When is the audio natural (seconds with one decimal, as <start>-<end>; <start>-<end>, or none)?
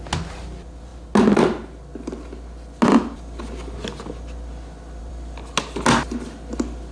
0.0-6.9